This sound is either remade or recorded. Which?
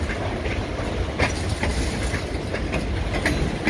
recorded